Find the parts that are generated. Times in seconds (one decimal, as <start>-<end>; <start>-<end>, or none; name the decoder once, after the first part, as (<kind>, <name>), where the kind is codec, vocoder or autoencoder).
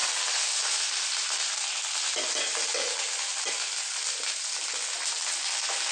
none